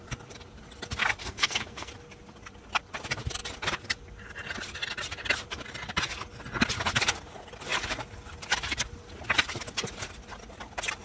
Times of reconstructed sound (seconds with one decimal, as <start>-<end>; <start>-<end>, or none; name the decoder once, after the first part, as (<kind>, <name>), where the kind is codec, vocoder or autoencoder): 1.2-1.9 (codec, SNAC)